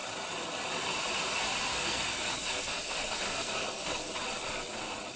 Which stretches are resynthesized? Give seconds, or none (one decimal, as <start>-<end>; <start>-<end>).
1.7-4.1